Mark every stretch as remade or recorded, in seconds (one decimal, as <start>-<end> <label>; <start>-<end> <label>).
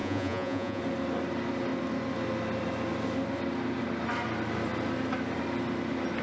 0.0-0.8 remade; 0.8-6.2 recorded